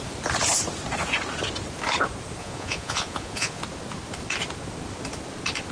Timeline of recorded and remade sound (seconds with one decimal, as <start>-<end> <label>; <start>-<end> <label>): 0.0-2.4 recorded; 2.4-3.6 remade; 3.6-5.7 recorded